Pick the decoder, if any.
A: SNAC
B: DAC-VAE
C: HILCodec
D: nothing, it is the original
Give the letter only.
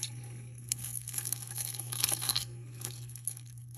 A